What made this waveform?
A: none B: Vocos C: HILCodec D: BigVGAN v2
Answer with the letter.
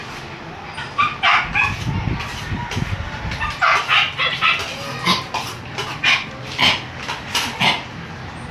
A